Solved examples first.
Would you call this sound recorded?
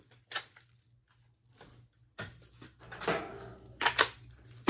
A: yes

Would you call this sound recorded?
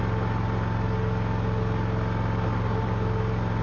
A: yes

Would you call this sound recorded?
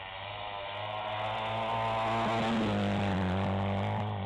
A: yes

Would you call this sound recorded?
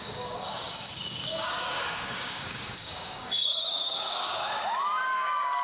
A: no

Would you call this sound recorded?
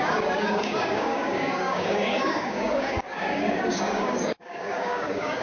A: no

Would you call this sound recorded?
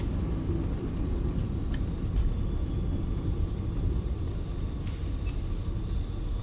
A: yes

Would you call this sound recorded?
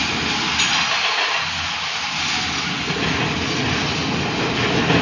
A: yes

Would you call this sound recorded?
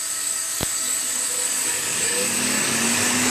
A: no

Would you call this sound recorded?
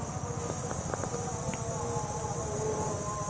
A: yes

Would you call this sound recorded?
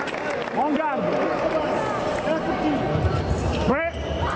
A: yes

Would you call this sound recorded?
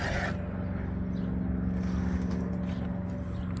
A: yes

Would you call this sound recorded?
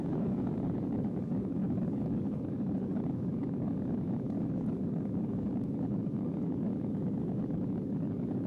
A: no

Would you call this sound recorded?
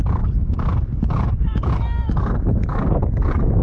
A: no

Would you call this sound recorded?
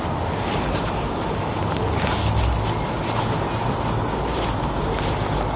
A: yes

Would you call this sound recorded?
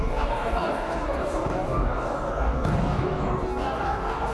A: no